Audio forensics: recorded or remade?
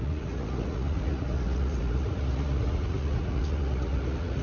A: remade